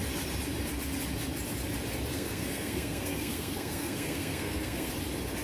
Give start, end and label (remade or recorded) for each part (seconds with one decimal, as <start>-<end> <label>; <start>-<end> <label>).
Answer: 0.0-2.1 recorded; 2.1-4.9 remade; 4.9-5.4 recorded